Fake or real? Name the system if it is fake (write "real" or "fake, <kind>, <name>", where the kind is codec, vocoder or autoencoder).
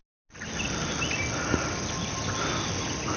real